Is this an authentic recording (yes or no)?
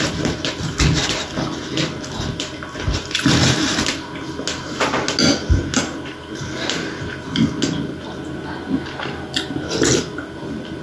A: yes